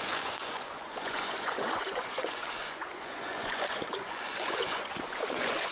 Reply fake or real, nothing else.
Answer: fake